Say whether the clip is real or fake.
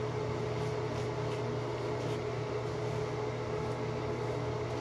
real